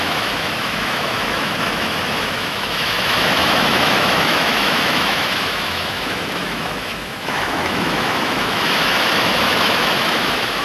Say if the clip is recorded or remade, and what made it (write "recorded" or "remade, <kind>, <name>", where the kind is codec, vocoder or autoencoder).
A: remade, autoencoder, DAC-VAE